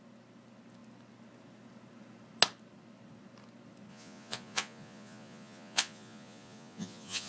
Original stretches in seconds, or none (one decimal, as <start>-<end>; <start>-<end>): 0.0-3.9